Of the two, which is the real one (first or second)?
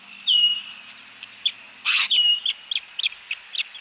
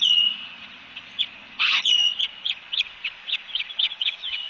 first